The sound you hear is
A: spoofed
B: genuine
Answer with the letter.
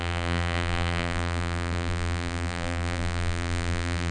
A